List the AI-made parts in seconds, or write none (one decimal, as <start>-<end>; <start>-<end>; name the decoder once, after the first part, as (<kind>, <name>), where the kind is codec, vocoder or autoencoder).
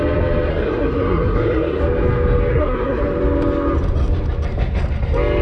0.5-1.8 (codec, SNAC); 2.5-3.0